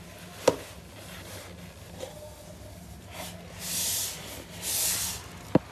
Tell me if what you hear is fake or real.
real